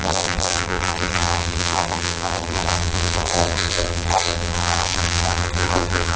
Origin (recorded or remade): remade